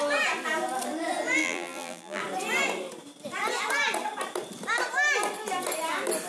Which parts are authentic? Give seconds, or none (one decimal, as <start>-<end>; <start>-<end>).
0.0-1.4; 2.2-6.3